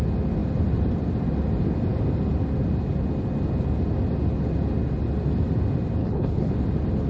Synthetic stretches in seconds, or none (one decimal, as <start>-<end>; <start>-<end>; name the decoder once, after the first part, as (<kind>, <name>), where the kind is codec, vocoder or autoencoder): 6.0-6.5 (codec, HILCodec)

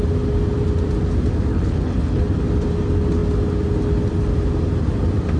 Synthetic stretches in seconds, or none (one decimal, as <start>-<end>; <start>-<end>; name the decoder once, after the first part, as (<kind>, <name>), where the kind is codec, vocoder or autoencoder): 1.5-2.2 (codec, HILCodec)

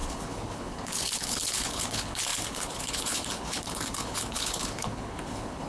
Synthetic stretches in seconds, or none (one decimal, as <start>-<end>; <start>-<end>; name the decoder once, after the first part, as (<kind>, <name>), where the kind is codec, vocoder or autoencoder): 0.0-5.7 (codec, HILCodec)

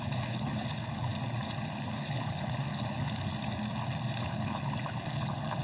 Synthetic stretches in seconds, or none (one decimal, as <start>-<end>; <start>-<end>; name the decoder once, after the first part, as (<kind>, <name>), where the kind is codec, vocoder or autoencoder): 0.0-1.1 (codec, HILCodec); 1.9-3.3; 4.3-5.6

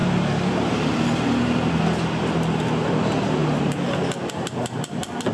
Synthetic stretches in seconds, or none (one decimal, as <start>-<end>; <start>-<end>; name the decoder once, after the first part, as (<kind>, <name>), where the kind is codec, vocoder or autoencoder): none

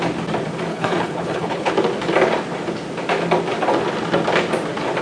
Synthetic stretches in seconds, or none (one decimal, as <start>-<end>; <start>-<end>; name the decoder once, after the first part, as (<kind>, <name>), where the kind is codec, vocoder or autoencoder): 0.7-1.7 (codec, HILCodec)

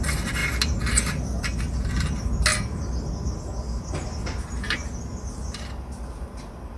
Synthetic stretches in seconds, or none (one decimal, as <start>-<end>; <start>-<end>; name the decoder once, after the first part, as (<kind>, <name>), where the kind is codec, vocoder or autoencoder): none

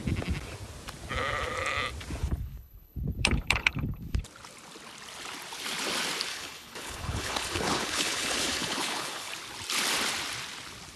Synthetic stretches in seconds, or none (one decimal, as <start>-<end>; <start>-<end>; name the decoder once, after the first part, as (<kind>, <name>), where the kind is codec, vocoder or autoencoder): 2.2-4.2 (codec, HILCodec); 6.3-9.3